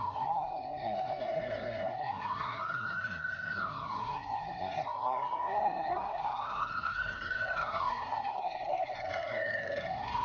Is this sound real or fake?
fake